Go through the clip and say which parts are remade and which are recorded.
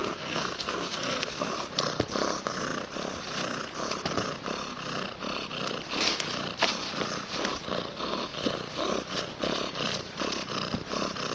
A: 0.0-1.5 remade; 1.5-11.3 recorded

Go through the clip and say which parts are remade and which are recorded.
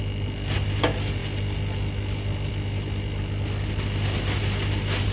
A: 0.0-5.1 recorded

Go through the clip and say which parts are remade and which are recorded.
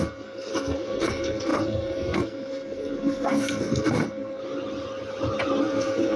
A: 0.0-4.4 remade; 4.4-5.6 recorded; 5.6-6.2 remade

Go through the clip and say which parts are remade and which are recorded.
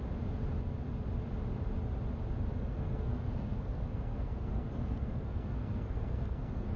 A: 0.0-2.5 recorded; 2.5-6.8 remade